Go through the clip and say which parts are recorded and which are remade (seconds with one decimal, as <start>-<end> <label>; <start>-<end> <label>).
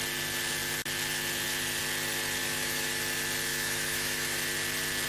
0.0-2.4 recorded; 2.4-3.0 remade; 3.0-3.5 recorded; 3.5-4.4 remade; 4.4-5.1 recorded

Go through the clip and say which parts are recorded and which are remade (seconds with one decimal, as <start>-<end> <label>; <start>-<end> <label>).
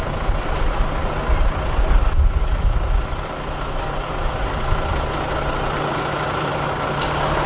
0.0-7.5 recorded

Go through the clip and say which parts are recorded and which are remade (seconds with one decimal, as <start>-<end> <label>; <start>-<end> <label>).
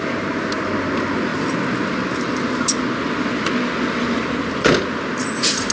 0.0-5.7 recorded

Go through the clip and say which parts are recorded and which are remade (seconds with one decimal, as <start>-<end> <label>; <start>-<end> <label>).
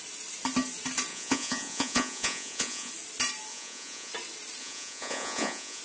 0.0-1.1 recorded; 1.1-2.9 remade; 2.9-3.5 recorded; 3.5-4.1 remade; 4.1-4.6 recorded; 4.6-5.8 remade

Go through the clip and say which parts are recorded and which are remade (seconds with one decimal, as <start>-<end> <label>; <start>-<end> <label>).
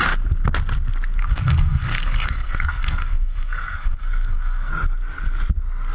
0.0-1.2 recorded; 1.2-4.7 remade; 4.7-5.9 recorded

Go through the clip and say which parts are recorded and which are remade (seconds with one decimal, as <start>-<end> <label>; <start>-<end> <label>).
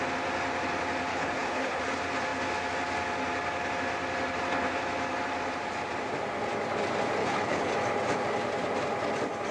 0.0-1.1 recorded; 1.1-1.8 remade; 1.8-7.2 recorded; 7.2-7.7 remade; 7.7-9.5 recorded